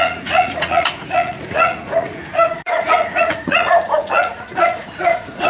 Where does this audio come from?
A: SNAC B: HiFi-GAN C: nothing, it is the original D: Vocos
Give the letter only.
D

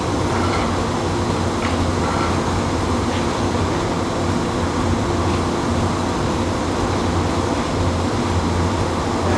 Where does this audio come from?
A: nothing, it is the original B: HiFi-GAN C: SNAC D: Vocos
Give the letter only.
A